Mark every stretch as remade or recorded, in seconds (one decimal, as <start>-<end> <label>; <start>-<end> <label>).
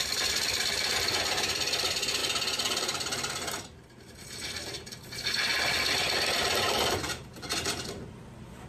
0.0-8.7 recorded